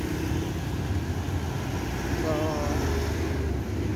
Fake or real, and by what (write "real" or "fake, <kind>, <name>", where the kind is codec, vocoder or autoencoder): real